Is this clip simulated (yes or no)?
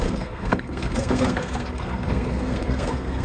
yes